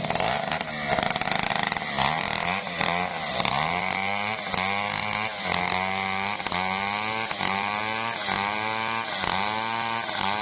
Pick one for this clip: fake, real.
real